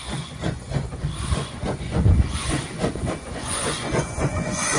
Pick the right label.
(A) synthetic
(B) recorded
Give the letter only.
A